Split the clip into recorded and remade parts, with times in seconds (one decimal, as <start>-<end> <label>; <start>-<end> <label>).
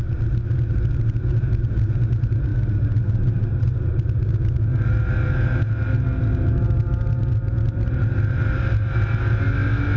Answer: 0.0-10.0 recorded